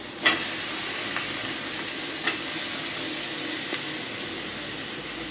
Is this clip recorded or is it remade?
recorded